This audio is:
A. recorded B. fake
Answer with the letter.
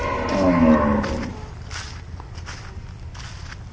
A